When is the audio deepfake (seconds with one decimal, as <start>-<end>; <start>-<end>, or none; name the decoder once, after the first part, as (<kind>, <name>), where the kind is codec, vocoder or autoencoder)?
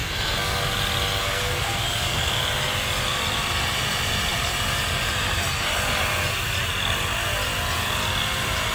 0.0-0.6 (codec, SNAC); 1.2-2.4